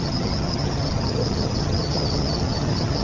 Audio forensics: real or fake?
fake